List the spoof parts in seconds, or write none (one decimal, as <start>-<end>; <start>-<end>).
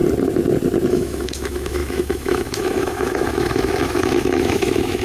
0.9-5.0